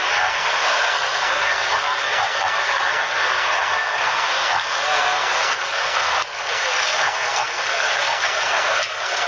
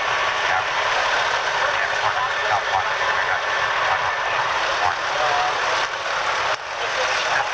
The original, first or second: second